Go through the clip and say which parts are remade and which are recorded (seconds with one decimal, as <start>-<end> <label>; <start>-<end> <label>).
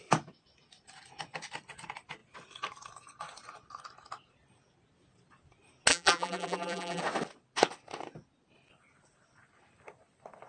0.0-5.9 recorded; 5.9-7.0 remade; 7.0-10.5 recorded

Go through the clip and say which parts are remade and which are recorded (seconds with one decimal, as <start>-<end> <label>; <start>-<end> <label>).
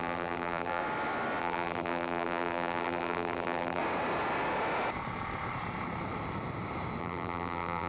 0.0-0.8 remade; 0.8-1.4 recorded; 1.4-3.8 remade; 3.8-7.0 recorded; 7.0-7.9 remade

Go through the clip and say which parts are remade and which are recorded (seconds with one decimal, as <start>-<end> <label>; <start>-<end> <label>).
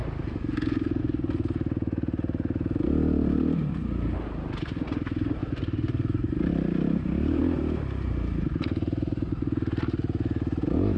0.0-5.4 recorded; 5.4-7.4 remade; 7.4-11.0 recorded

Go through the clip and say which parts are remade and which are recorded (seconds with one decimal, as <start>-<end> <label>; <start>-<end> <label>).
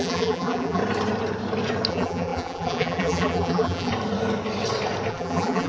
0.0-0.8 remade; 0.8-1.9 recorded; 1.9-3.9 remade; 3.9-5.1 recorded; 5.1-5.7 remade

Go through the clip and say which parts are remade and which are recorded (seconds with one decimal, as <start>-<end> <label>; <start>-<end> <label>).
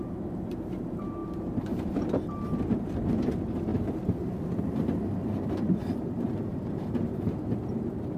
0.0-3.7 remade; 3.7-4.6 recorded; 4.6-8.2 remade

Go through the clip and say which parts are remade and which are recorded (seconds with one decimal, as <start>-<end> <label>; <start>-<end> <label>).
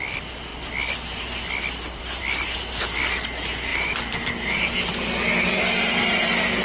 0.0-3.7 recorded; 3.7-6.6 remade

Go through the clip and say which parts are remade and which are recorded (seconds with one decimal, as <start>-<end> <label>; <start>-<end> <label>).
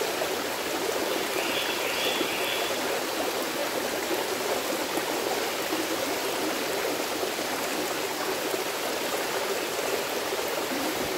0.0-6.2 recorded; 6.2-6.8 remade; 6.8-11.2 recorded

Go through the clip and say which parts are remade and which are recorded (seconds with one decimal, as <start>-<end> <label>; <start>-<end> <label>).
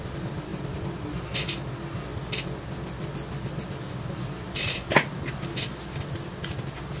0.0-0.5 recorded; 0.5-1.1 remade; 1.1-2.1 recorded; 2.1-4.5 remade; 4.5-7.0 recorded